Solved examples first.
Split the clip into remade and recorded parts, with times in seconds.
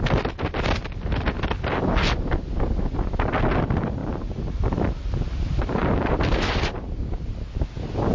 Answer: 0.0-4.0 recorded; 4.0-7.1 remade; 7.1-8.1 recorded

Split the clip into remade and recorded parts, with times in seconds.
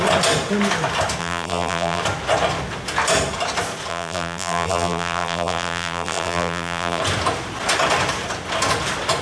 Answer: 0.0-1.2 recorded; 1.2-2.0 remade; 2.0-3.9 recorded; 3.9-7.0 remade; 7.0-9.2 recorded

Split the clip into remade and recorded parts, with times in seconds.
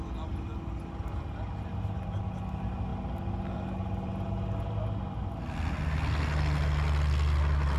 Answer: 0.0-7.8 recorded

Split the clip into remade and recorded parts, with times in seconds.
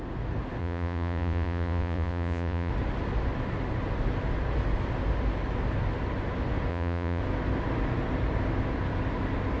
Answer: 0.0-0.6 recorded; 0.6-2.7 remade; 2.7-6.7 recorded; 6.7-7.2 remade; 7.2-9.6 recorded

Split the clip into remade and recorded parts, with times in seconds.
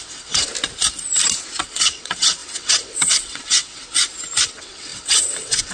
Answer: 0.0-0.5 remade; 0.5-1.6 recorded; 1.6-3.8 remade; 3.8-4.4 recorded; 4.4-5.7 remade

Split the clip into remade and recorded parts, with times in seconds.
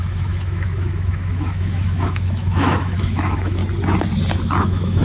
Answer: 0.0-3.6 remade; 3.6-4.6 recorded; 4.6-5.0 remade